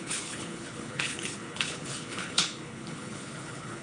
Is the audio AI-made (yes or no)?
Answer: yes